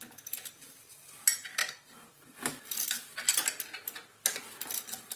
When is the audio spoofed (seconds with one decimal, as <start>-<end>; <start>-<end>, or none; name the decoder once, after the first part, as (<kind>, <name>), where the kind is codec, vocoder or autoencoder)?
none

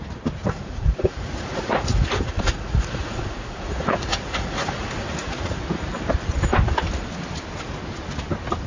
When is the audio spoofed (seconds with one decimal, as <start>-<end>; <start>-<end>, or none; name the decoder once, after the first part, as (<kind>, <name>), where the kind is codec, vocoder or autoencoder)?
0.4-5.6 (vocoder, Vocos)

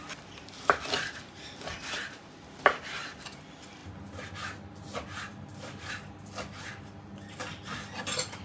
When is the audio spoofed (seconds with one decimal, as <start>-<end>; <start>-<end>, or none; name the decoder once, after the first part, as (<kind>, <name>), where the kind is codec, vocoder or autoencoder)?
none

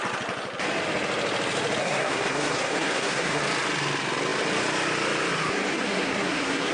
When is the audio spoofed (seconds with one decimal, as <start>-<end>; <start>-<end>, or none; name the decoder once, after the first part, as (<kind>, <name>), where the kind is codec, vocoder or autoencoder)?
1.8-3.4 (codec, SNAC); 5.7-6.7

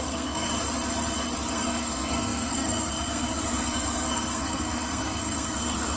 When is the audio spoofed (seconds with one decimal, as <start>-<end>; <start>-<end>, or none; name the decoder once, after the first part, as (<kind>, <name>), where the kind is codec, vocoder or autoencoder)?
0.0-0.5 (codec, SNAC); 1.5-6.0

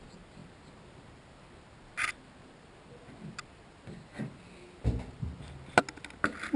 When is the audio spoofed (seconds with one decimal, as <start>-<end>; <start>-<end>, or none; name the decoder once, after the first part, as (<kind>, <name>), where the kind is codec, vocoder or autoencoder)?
none

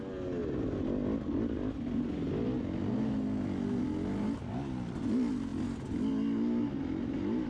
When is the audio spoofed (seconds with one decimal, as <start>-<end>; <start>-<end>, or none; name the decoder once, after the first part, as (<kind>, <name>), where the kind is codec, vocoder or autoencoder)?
none

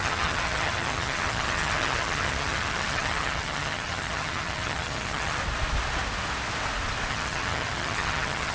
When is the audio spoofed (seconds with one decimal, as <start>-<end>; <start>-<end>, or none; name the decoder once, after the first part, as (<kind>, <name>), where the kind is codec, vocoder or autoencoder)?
0.0-5.4 (vocoder, HiFi-GAN); 7.1-8.5